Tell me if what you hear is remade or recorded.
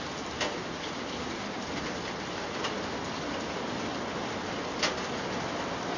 recorded